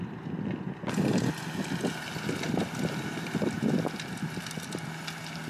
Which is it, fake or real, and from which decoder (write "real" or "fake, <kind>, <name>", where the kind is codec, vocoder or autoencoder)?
real